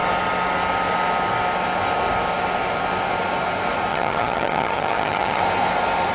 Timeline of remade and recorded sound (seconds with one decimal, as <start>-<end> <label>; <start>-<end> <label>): 0.0-3.9 recorded; 3.9-5.4 remade; 5.4-6.1 recorded